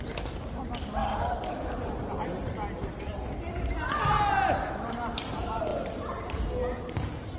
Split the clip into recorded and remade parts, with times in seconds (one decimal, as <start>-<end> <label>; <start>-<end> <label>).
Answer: 0.0-7.4 recorded

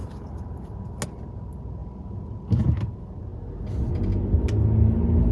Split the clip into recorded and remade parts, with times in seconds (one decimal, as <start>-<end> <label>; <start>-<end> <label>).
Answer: 0.0-5.3 recorded

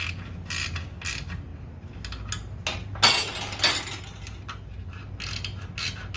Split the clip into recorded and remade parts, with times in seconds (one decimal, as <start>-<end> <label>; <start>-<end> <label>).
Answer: 0.0-6.2 recorded

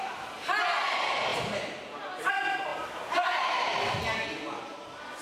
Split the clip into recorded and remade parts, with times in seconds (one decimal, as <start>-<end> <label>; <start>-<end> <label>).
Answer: 0.0-2.7 recorded; 2.7-4.0 remade; 4.0-5.2 recorded

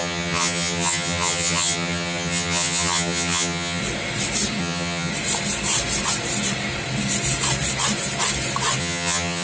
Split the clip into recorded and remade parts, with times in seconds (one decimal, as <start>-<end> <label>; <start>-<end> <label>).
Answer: 0.0-3.8 remade; 3.8-4.6 recorded; 4.6-5.1 remade; 5.1-8.8 recorded; 8.8-9.4 remade